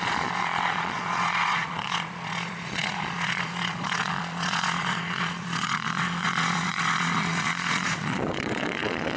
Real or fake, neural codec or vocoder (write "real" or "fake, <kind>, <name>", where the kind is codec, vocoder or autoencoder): fake, vocoder, Vocos